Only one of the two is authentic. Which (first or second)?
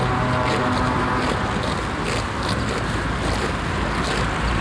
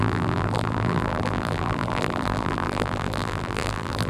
first